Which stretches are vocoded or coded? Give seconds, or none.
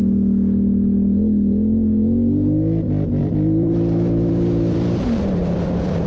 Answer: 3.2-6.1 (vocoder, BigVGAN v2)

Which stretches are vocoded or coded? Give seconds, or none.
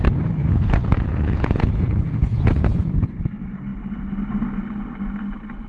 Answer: 0.4-3.1 (vocoder, Vocos)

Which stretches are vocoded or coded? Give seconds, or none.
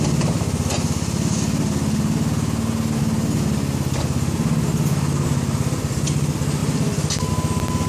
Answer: none